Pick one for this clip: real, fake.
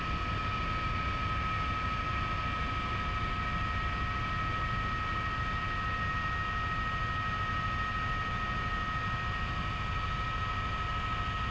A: real